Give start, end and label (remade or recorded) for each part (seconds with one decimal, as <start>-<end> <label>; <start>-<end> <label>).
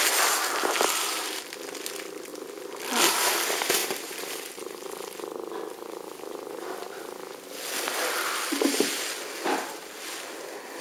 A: 0.0-3.8 recorded; 3.8-4.8 remade; 4.8-10.8 recorded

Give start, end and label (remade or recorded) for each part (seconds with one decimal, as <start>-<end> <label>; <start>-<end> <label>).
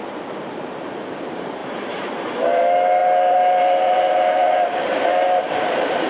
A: 0.0-6.1 remade